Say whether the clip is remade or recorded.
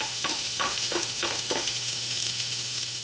remade